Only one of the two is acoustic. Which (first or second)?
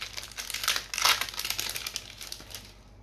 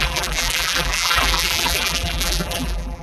first